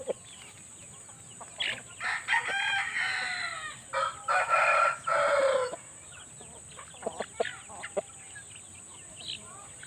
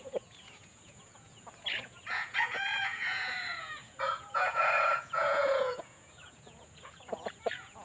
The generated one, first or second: second